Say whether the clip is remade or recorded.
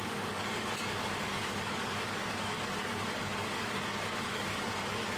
remade